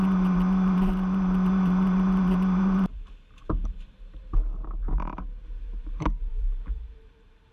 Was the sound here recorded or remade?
remade